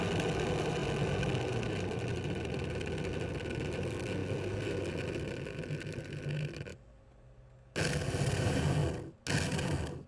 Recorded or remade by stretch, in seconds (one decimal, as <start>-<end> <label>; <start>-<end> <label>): 0.0-10.1 recorded

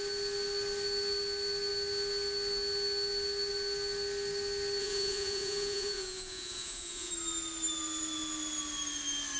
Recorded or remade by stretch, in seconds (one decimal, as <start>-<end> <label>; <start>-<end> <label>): 0.0-4.8 recorded; 4.8-7.1 remade; 7.1-9.4 recorded

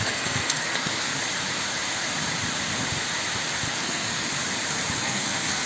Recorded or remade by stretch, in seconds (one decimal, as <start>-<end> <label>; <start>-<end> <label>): 0.0-1.1 remade; 1.1-3.7 recorded; 3.7-4.3 remade; 4.3-5.0 recorded; 5.0-5.7 remade

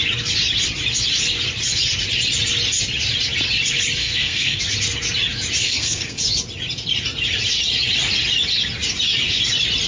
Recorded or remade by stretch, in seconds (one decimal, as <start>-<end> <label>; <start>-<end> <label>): 0.0-4.0 recorded; 4.0-4.6 remade; 4.6-5.6 recorded; 5.6-6.2 remade; 6.2-9.9 recorded